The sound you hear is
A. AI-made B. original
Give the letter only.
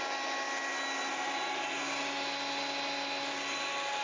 B